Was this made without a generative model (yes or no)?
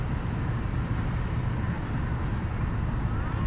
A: yes